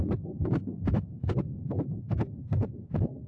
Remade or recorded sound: remade